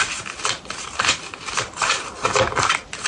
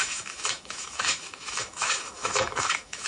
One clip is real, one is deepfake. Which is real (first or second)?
first